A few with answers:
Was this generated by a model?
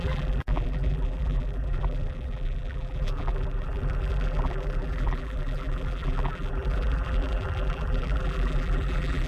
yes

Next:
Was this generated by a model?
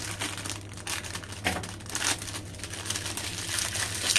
no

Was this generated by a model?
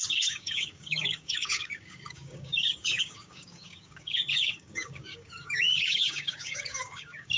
yes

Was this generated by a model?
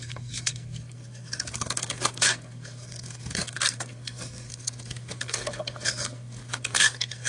yes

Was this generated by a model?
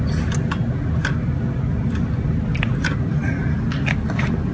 no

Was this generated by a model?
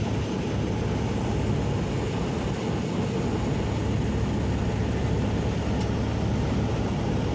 no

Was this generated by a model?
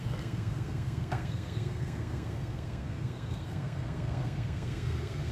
yes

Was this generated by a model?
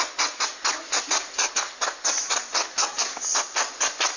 no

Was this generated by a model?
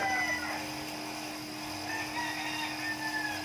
no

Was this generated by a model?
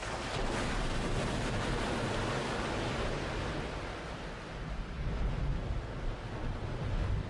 no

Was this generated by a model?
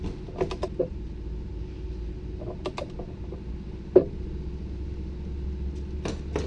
no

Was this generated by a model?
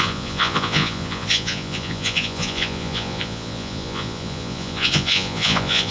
yes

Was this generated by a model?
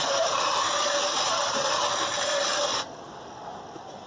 no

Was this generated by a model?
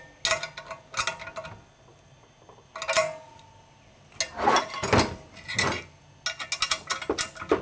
no